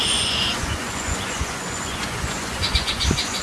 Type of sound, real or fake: fake